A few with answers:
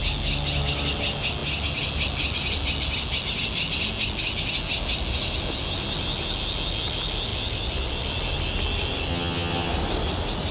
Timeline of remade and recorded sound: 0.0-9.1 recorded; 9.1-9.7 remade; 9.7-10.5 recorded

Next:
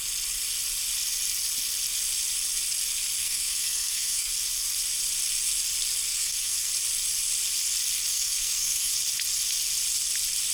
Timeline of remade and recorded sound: 0.0-3.2 recorded; 3.2-4.3 remade; 4.3-6.1 recorded; 6.1-6.7 remade; 6.7-8.1 recorded; 8.1-8.9 remade; 8.9-10.5 recorded

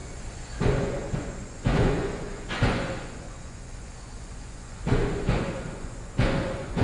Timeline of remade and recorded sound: 0.0-6.8 remade

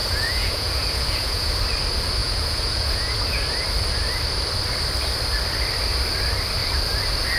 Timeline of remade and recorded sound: 0.0-1.6 remade; 1.6-2.2 recorded; 2.2-3.2 remade; 3.2-7.4 recorded

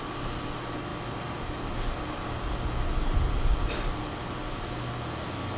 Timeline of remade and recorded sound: 0.0-5.6 recorded